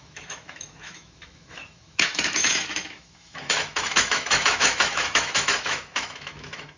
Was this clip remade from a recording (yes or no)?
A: yes